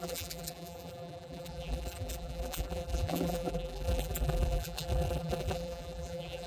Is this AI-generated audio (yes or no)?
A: yes